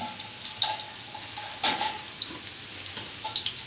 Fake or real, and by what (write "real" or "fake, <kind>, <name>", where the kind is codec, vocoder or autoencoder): real